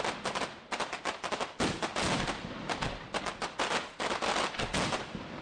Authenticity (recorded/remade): recorded